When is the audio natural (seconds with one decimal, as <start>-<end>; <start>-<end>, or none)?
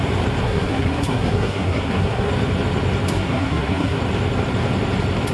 0.0-0.4; 2.3-3.1; 4.0-5.3